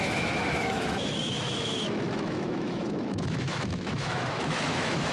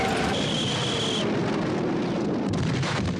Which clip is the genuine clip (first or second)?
second